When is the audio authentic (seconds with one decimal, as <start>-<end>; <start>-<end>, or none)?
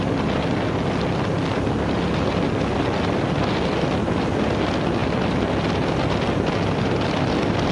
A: 0.0-7.7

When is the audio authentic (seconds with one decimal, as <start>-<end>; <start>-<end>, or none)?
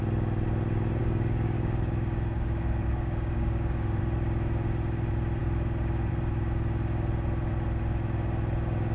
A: 0.0-1.0; 4.0-8.9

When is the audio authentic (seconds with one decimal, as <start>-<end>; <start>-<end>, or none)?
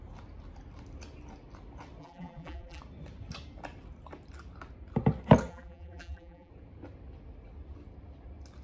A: 0.0-2.0; 2.8-5.5; 6.5-8.6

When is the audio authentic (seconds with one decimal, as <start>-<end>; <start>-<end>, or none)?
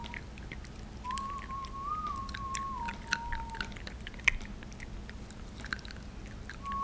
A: 0.0-6.8